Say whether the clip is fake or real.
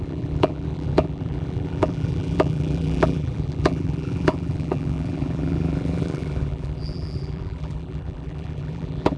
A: fake